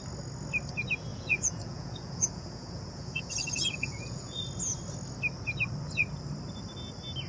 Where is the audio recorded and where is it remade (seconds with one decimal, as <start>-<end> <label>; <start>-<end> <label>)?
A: 0.0-1.1 recorded; 1.1-4.4 remade; 4.4-7.3 recorded